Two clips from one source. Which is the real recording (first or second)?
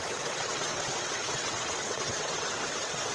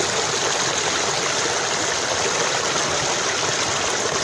second